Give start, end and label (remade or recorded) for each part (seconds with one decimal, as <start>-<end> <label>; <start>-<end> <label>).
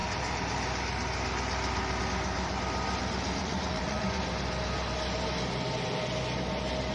0.0-3.4 recorded; 3.4-4.2 remade; 4.2-6.9 recorded